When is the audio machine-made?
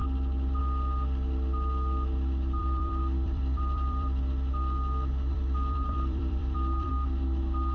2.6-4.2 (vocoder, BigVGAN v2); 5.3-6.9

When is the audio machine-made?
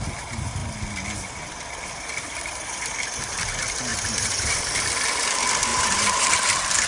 3.9-4.6 (vocoder, BigVGAN v2); 5.7-6.4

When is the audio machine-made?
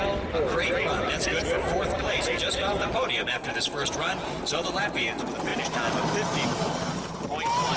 none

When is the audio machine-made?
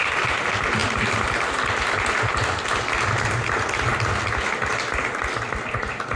none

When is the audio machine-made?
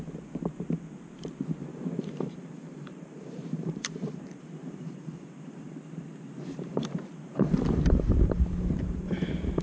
1.6-5.8 (vocoder, BigVGAN v2); 6.7-9.1